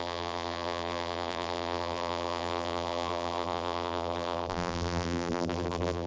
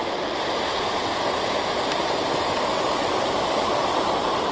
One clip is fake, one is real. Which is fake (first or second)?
first